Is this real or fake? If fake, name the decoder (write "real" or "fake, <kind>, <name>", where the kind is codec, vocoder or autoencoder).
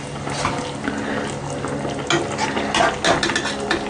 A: real